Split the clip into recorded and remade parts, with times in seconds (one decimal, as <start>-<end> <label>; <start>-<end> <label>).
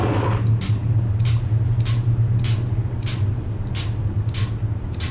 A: 0.0-5.1 recorded